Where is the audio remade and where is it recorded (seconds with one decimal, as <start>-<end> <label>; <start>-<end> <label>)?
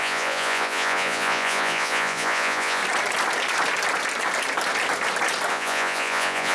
0.0-2.8 remade; 2.8-5.5 recorded; 5.5-6.5 remade